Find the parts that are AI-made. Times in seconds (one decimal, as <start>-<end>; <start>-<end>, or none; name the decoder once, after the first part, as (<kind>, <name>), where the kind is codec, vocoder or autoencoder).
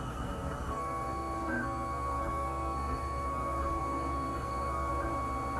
0.0-4.9 (codec, SNAC)